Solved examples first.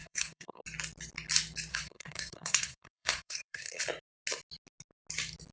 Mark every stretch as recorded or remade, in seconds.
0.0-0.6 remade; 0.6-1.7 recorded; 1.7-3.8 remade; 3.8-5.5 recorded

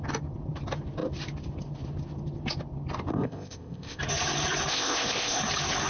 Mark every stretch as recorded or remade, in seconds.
0.0-3.1 recorded; 3.1-4.0 remade; 4.0-4.7 recorded; 4.7-5.4 remade; 5.4-5.9 recorded

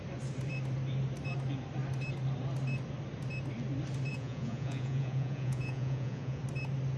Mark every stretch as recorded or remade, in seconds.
0.0-4.1 recorded; 4.1-6.4 remade; 6.4-7.0 recorded

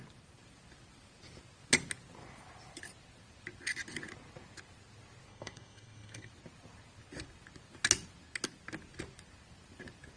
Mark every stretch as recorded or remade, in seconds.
0.0-5.3 recorded; 5.3-6.3 remade; 6.3-10.2 recorded

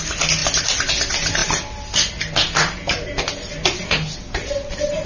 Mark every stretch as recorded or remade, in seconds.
0.0-0.4 recorded; 0.4-0.9 remade; 0.9-5.1 recorded

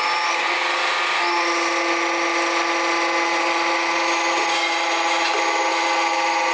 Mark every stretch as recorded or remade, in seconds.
0.0-6.5 recorded

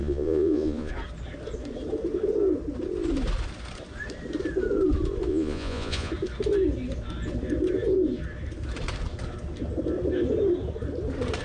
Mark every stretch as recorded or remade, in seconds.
0.0-0.9 remade; 0.9-5.3 recorded; 5.3-6.1 remade; 6.1-11.4 recorded